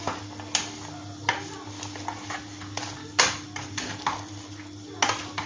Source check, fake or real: real